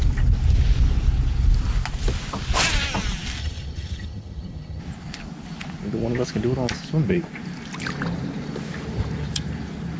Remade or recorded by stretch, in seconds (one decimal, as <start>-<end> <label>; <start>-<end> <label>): 0.0-3.4 recorded; 3.4-4.8 remade; 4.8-10.0 recorded